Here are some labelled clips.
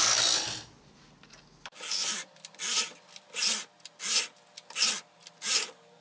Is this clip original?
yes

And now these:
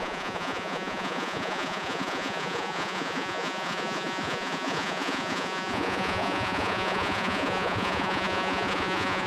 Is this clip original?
no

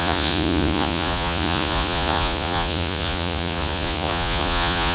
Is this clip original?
no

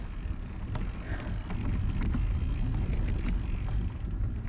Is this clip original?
yes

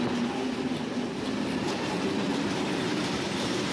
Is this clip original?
yes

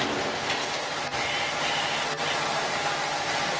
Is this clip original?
yes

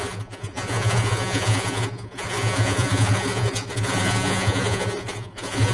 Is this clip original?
no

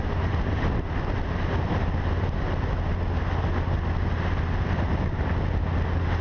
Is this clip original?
yes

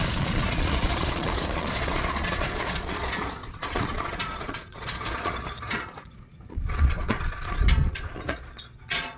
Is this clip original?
no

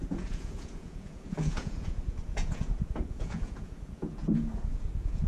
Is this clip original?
no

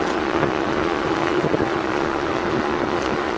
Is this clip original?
no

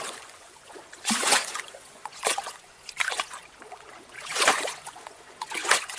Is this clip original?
no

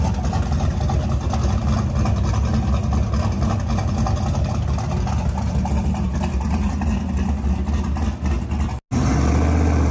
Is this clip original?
yes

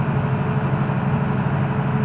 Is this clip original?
yes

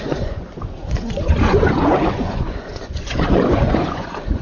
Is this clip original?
no